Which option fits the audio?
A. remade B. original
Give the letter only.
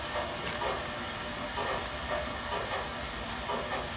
B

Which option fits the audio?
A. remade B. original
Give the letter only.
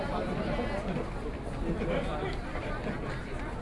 B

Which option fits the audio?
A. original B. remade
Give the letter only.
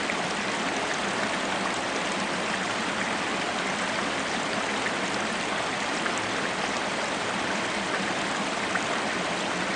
A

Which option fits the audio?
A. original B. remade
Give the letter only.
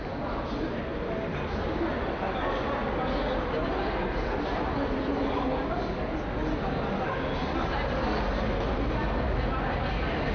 A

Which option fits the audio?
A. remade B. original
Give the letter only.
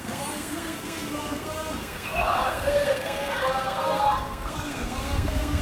A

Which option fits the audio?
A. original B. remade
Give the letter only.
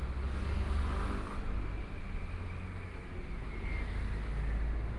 A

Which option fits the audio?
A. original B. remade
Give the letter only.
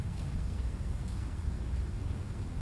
B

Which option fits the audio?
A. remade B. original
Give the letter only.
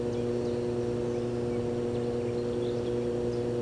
B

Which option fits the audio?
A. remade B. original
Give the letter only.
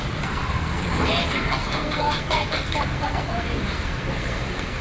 A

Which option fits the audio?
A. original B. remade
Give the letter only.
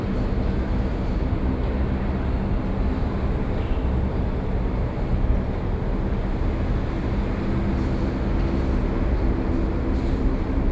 A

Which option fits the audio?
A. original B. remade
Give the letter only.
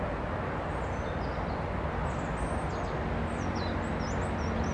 A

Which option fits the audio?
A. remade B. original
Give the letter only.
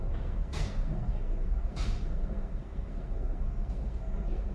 A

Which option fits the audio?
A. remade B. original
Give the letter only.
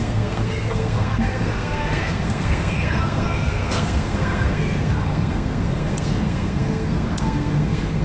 A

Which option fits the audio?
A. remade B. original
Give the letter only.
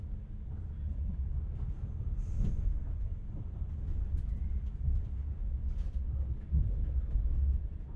B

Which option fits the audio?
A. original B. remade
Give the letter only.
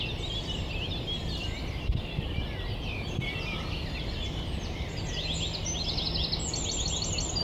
A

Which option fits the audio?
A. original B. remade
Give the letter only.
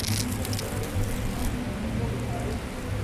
A